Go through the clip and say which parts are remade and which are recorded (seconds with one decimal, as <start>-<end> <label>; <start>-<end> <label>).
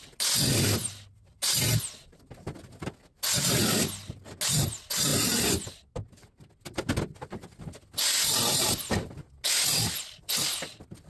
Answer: 0.0-11.1 recorded